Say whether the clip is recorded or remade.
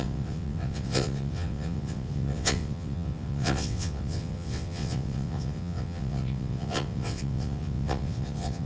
remade